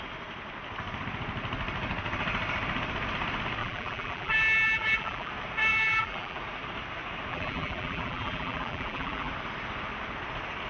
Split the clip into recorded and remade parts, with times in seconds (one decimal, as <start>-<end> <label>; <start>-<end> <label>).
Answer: 0.0-3.6 recorded; 3.6-5.3 remade; 5.3-5.7 recorded; 5.7-6.4 remade; 6.4-7.3 recorded; 7.3-9.3 remade; 9.3-10.7 recorded